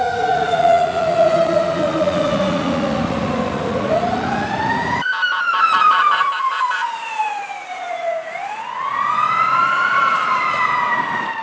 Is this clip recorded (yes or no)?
no